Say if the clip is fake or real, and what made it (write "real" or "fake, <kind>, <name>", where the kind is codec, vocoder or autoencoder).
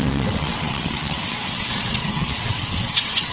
fake, vocoder, WaveNeXt